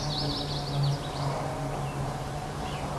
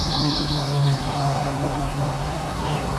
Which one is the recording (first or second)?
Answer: first